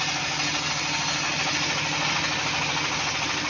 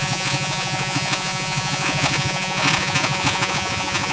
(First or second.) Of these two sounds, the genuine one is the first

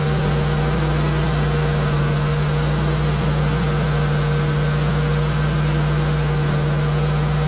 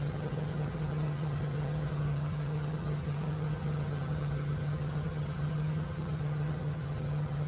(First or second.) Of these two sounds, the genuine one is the first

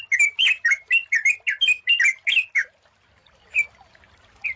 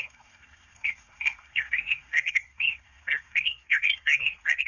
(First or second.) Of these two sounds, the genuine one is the first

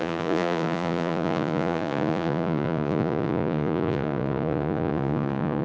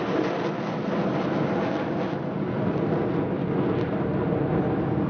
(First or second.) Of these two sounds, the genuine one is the second